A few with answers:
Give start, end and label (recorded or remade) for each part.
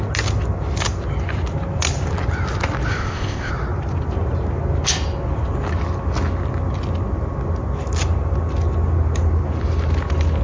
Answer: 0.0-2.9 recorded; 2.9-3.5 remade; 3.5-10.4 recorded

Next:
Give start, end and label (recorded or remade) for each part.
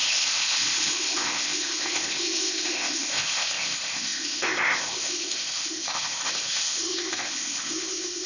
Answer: 0.0-8.3 remade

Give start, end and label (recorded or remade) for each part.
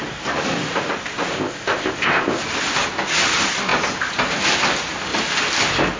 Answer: 0.0-1.3 recorded; 1.3-2.4 remade; 2.4-6.0 recorded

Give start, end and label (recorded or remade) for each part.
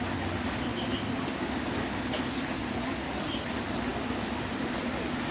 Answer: 0.0-5.3 recorded